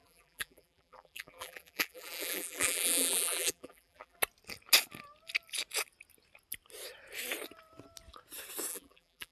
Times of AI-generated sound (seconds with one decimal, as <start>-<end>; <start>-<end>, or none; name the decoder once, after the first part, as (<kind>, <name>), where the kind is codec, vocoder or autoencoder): 0.0-4.2 (vocoder, BigVGAN v2); 8.7-9.3